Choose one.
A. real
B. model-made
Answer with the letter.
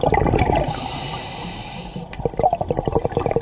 A